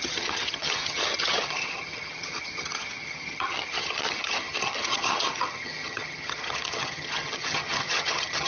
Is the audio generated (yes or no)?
yes